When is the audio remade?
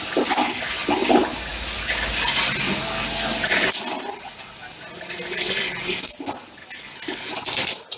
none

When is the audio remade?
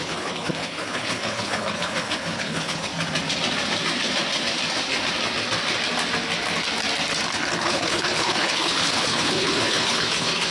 0.0-2.9; 7.6-10.5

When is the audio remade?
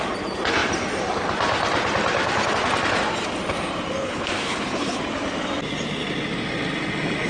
4.0-5.0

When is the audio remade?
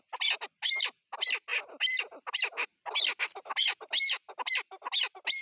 none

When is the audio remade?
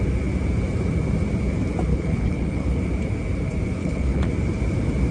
1.9-2.8; 3.8-4.3